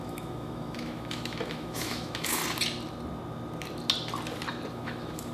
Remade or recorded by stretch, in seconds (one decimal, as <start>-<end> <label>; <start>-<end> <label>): 0.0-2.4 remade; 2.4-4.7 recorded; 4.7-5.3 remade